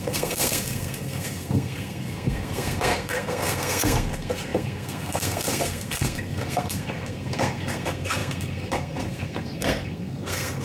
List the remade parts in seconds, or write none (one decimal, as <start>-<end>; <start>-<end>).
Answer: 0.0-10.6